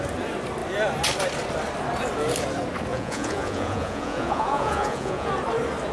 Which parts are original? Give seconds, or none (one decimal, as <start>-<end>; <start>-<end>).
0.0-2.9; 5.3-5.9